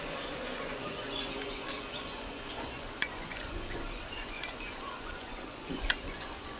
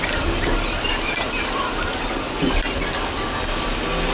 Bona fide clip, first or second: second